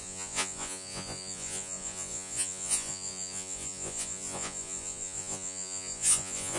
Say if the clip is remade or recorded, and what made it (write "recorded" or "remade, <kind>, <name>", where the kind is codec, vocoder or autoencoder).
remade, vocoder, Vocos